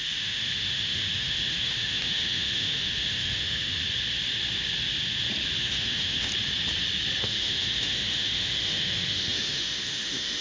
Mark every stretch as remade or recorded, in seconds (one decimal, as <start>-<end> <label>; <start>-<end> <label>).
0.0-3.8 remade; 3.8-5.6 recorded; 5.6-6.3 remade; 6.3-7.2 recorded; 7.2-10.4 remade

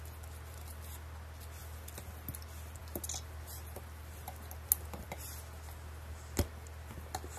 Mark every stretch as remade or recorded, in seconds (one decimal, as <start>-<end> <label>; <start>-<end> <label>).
0.0-7.4 recorded

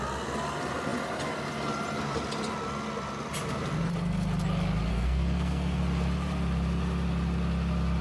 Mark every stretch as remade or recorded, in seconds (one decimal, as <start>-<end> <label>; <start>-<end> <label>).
0.0-4.9 recorded; 4.9-5.8 remade; 5.8-8.0 recorded

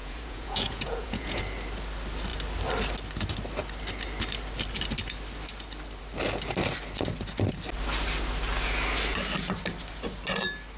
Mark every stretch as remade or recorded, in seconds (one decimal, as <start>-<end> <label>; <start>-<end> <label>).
0.0-1.4 remade; 1.4-10.8 recorded

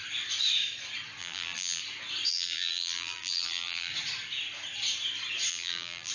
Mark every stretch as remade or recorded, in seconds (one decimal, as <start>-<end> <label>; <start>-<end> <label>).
0.0-1.2 recorded; 1.2-1.8 remade; 1.8-2.3 recorded; 2.3-3.9 remade; 3.9-5.5 recorded; 5.5-6.1 remade

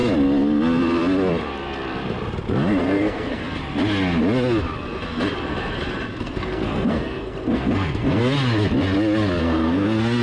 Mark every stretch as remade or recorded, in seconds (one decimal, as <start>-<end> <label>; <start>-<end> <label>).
0.0-2.8 recorded; 2.8-3.4 remade; 3.4-6.2 recorded; 6.2-8.2 remade; 8.2-9.4 recorded; 9.4-10.2 remade

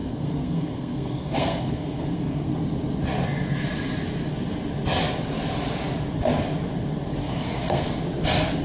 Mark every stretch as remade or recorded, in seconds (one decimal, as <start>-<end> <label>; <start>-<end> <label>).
0.0-2.5 remade; 2.5-7.2 recorded; 7.2-7.9 remade; 7.9-8.6 recorded

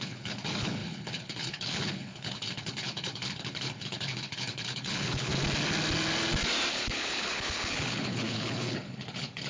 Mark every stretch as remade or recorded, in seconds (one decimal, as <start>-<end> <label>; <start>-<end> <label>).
0.0-5.3 remade; 5.3-6.7 recorded; 6.7-9.5 remade